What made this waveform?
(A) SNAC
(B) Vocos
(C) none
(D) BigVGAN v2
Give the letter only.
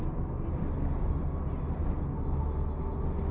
C